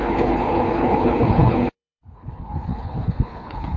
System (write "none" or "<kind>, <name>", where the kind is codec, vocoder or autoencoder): codec, HILCodec